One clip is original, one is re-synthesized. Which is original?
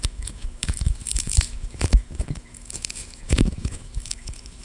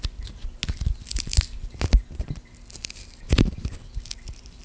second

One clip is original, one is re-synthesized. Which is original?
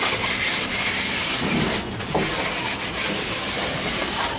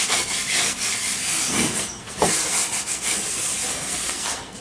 first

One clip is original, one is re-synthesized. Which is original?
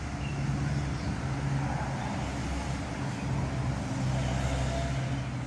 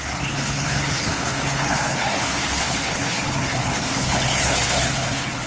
first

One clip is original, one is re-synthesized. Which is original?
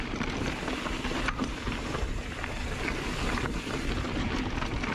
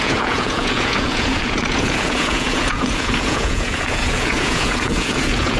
first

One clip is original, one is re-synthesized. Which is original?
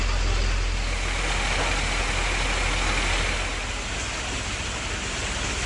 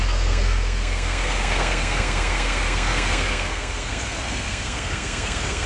first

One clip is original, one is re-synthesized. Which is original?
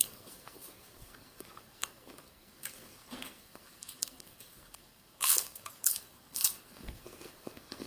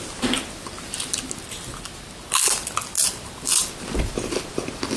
second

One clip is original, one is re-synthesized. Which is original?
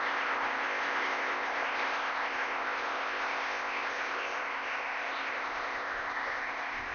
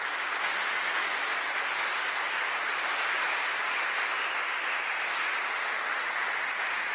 second